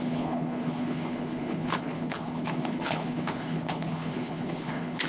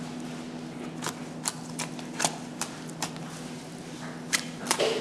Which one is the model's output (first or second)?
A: first